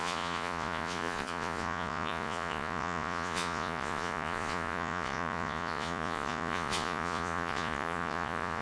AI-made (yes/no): yes